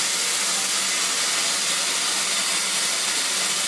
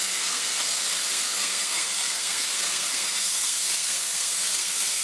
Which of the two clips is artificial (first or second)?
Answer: second